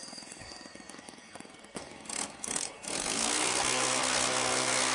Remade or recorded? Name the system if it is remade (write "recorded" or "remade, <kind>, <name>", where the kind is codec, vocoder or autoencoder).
remade, codec, SNAC